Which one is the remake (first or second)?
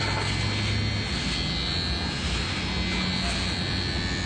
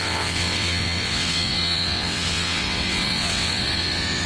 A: second